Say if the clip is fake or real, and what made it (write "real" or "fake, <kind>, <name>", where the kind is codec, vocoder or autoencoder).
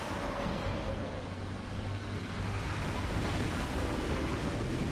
fake, codec, SNAC